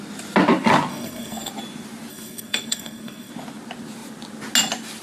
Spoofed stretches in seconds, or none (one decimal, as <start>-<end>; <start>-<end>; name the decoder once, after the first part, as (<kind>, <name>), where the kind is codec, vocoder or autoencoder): 0.9-1.5 (codec, SNAC); 2.1-3.3